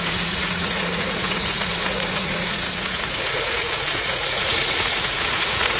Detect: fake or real fake